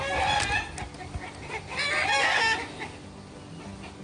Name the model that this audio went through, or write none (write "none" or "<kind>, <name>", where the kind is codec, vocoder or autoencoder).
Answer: none